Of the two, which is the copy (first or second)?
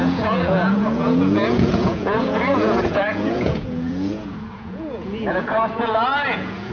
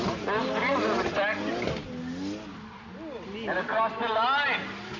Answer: first